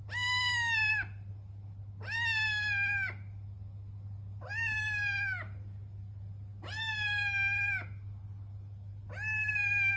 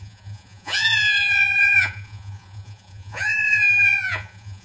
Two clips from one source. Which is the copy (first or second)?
second